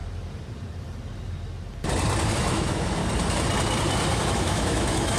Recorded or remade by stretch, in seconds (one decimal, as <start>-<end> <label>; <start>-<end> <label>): 0.0-2.3 recorded; 2.3-3.0 remade; 3.0-4.1 recorded; 4.1-5.2 remade